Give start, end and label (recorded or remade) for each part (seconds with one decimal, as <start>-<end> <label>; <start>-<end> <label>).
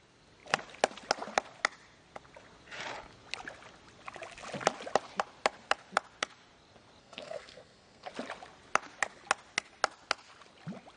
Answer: 0.0-7.0 recorded; 7.0-8.1 remade; 8.1-11.0 recorded